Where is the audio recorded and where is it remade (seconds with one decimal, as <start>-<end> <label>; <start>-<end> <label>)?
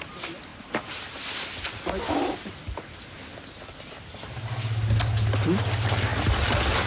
0.0-6.9 recorded